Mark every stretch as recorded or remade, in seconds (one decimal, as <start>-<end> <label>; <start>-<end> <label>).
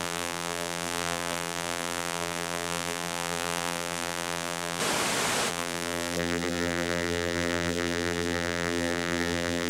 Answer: 0.0-4.8 remade; 4.8-5.5 recorded; 5.5-9.7 remade